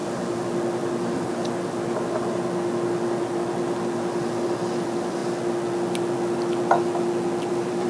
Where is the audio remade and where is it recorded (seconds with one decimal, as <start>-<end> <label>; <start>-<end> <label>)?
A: 0.0-4.7 recorded; 4.7-5.2 remade; 5.2-7.5 recorded; 7.5-7.9 remade